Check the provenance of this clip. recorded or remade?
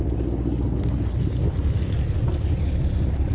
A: recorded